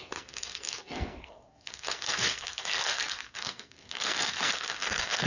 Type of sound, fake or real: fake